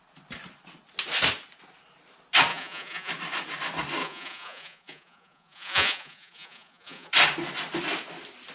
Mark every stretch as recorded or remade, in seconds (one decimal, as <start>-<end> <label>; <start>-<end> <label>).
0.0-2.5 recorded; 2.5-3.1 remade; 3.1-4.0 recorded; 4.0-7.1 remade; 7.1-8.5 recorded